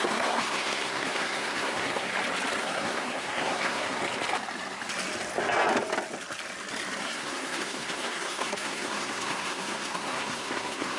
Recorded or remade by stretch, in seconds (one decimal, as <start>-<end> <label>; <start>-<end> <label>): 0.0-2.1 remade; 2.1-2.6 recorded; 2.6-4.0 remade; 4.0-7.0 recorded; 7.0-11.0 remade